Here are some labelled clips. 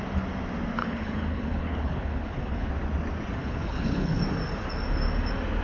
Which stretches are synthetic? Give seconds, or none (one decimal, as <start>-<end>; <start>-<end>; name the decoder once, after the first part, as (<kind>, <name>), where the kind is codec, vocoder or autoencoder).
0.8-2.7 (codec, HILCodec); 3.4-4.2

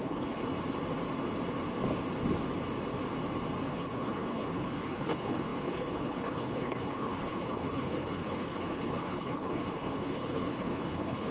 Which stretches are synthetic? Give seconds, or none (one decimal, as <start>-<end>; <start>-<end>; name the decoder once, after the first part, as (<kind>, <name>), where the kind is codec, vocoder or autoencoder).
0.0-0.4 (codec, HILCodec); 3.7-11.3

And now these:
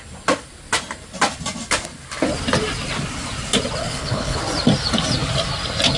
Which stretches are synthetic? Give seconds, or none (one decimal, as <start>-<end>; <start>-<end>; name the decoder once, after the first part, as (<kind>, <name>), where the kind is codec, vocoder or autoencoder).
3.8-4.4 (codec, HILCodec)

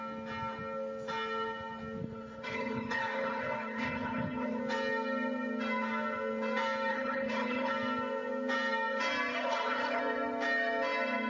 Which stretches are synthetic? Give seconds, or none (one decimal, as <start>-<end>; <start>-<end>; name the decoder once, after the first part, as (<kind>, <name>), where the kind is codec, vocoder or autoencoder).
2.0-4.6 (codec, HILCodec); 6.9-7.7; 9.3-10.0